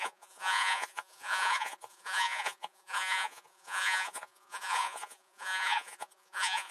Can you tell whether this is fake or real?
fake